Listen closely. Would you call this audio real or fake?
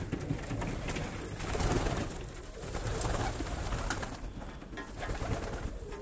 real